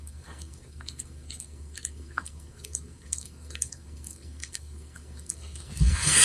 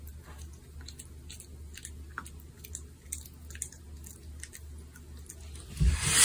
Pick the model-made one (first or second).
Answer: first